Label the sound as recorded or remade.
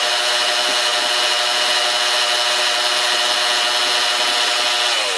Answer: recorded